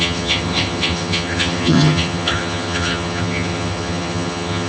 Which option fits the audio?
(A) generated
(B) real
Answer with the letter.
A